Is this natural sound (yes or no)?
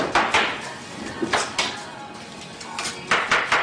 yes